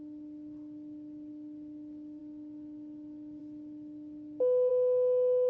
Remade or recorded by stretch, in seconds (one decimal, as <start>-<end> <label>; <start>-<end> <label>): 0.0-5.5 recorded